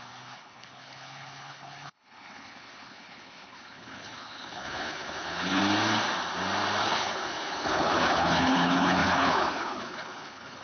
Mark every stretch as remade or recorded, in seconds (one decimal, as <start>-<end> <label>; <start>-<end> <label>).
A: 0.0-5.6 remade; 5.6-6.8 recorded; 6.8-10.6 remade